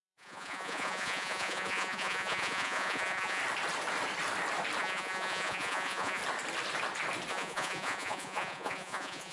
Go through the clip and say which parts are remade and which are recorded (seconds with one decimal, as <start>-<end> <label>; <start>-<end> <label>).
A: 0.0-3.4 remade; 3.4-4.8 recorded; 4.8-6.2 remade; 6.2-7.3 recorded; 7.3-9.3 remade

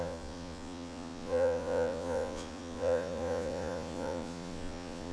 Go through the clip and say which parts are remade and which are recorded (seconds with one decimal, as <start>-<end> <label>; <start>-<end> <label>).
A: 0.0-5.1 remade

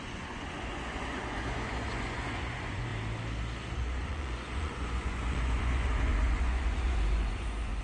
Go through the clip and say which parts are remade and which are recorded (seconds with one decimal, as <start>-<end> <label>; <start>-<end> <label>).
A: 0.0-2.9 remade; 2.9-3.7 recorded; 3.7-7.8 remade

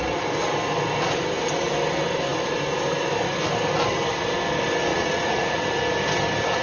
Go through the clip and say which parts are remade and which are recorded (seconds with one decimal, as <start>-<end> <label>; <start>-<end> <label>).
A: 0.0-4.9 recorded; 4.9-5.6 remade; 5.6-6.6 recorded

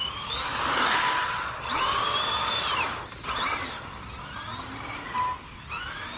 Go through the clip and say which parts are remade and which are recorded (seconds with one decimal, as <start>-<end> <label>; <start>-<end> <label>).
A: 0.0-6.2 recorded

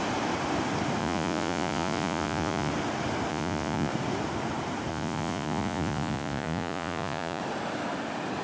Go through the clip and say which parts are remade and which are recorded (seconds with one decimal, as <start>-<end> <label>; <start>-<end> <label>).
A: 0.0-1.0 recorded; 1.0-2.7 remade; 2.7-3.3 recorded; 3.3-3.9 remade; 3.9-4.9 recorded; 4.9-7.4 remade; 7.4-8.4 recorded